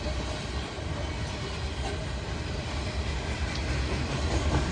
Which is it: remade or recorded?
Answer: recorded